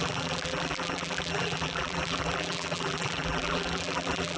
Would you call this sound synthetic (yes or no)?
yes